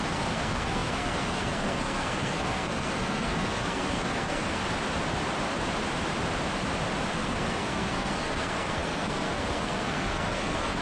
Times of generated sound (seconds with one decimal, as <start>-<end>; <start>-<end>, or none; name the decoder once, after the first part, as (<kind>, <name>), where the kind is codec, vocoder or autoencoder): 0.0-4.6 (codec, SNAC); 7.1-10.8